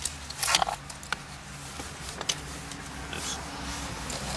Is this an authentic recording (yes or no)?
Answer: yes